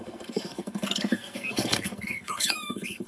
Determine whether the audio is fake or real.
fake